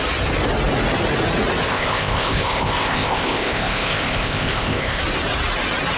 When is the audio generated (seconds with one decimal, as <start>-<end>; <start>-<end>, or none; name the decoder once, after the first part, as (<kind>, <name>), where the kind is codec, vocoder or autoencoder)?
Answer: 1.7-5.0 (codec, ZipCodec)